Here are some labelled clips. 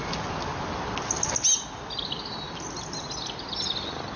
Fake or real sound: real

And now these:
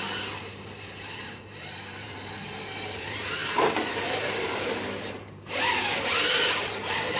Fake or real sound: fake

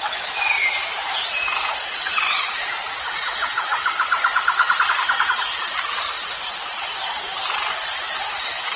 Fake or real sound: fake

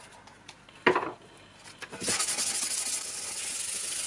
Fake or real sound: real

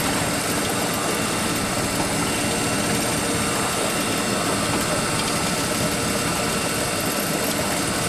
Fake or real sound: real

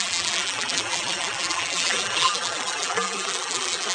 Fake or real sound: fake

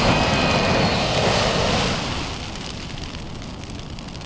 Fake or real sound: real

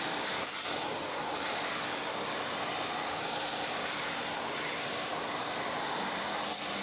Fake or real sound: fake